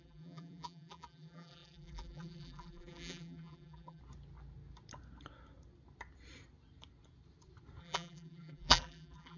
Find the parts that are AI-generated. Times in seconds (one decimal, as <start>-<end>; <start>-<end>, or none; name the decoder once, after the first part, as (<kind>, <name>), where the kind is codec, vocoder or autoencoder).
0.0-4.0 (vocoder, BigVGAN v2); 7.8-9.4